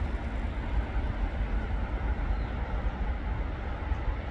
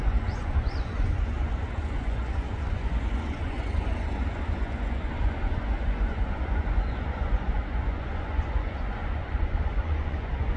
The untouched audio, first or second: first